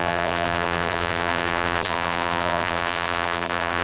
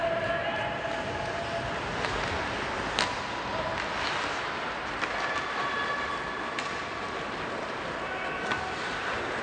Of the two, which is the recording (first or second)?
second